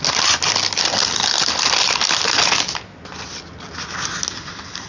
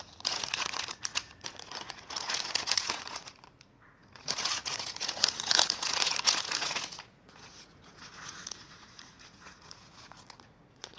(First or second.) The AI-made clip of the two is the second